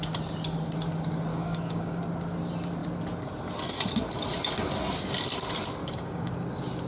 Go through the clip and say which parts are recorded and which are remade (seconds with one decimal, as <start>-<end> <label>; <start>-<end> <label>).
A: 0.0-1.3 recorded; 1.3-2.0 remade; 2.0-5.8 recorded; 5.8-6.3 remade; 6.3-6.9 recorded